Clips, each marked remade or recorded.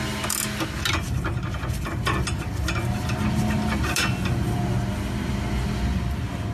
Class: recorded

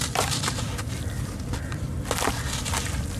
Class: remade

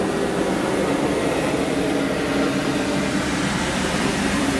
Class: recorded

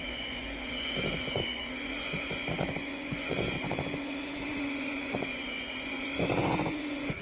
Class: remade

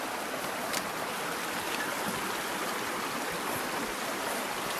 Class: recorded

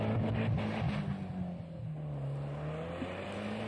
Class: recorded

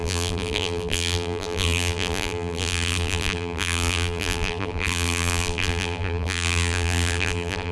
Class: remade